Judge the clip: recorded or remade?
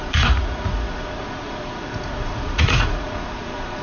remade